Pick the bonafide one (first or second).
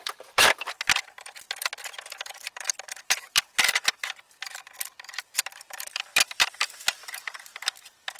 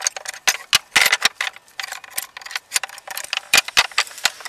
second